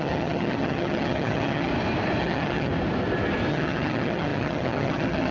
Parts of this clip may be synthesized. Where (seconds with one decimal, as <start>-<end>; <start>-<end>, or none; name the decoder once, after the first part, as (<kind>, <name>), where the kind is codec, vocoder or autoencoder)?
0.0-1.7 (vocoder, HiFi-GAN); 2.2-2.7; 3.5-5.3